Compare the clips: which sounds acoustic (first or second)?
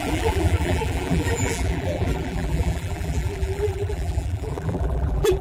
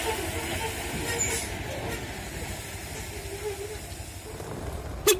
second